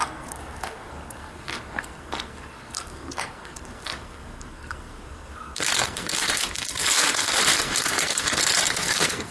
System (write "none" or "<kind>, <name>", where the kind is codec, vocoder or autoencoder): codec, SNAC